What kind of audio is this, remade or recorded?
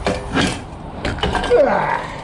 recorded